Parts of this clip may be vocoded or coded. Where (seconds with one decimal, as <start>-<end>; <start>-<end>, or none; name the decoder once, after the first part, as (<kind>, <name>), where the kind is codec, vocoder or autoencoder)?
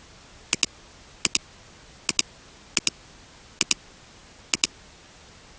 none